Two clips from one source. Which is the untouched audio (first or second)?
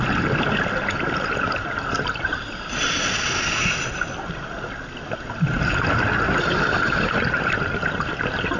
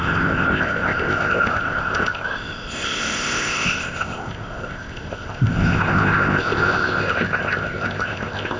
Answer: first